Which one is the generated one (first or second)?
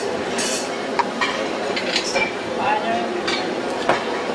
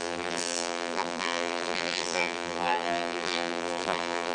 second